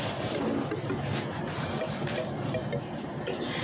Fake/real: real